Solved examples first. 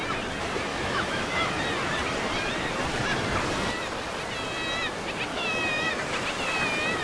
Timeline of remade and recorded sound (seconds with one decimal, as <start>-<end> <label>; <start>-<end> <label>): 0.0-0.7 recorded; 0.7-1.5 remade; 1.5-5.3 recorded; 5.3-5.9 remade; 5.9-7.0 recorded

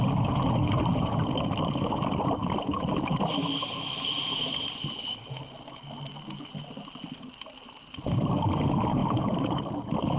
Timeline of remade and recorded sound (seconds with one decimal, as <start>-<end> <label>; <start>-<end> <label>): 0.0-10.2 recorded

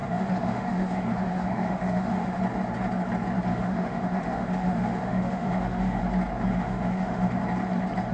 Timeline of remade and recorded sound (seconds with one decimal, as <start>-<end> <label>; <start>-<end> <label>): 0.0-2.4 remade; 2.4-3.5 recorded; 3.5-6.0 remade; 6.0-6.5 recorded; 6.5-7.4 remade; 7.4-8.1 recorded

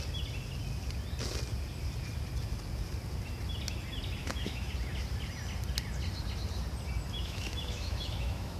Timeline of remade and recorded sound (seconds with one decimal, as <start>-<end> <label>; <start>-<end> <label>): 0.0-4.2 recorded; 4.2-4.7 remade; 4.7-7.1 recorded; 7.1-8.6 remade

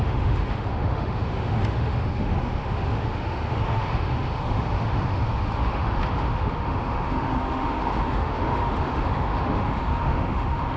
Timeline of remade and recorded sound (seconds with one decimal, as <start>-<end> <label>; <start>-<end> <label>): 0.0-10.8 remade